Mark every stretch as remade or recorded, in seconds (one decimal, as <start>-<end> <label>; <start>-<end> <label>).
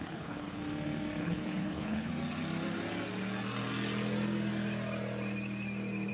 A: 0.0-0.6 remade; 0.6-1.2 recorded; 1.2-2.1 remade; 2.1-6.1 recorded